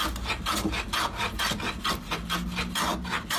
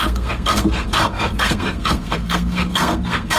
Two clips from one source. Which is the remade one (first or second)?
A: second